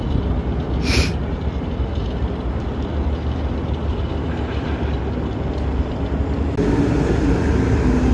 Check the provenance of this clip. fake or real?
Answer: real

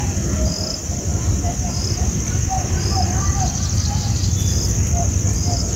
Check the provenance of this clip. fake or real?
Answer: real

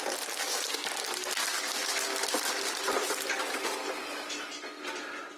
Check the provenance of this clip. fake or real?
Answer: real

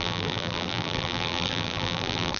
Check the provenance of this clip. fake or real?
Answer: fake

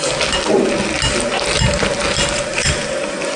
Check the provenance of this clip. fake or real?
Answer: real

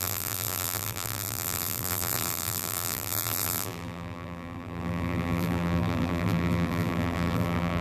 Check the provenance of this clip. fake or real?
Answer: fake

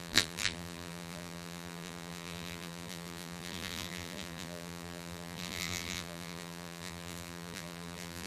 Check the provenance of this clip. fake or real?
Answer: fake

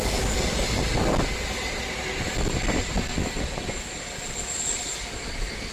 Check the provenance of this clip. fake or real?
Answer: real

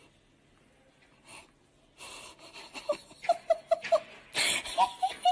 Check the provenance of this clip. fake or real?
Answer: real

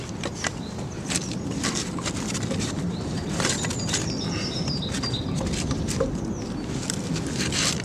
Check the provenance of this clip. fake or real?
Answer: real